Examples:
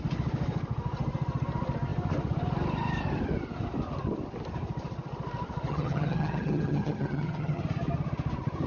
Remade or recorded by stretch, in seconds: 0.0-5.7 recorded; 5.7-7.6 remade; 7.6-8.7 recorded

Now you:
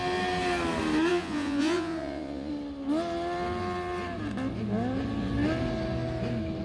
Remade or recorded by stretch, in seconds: 0.0-1.1 recorded; 1.1-2.5 remade; 2.5-6.6 recorded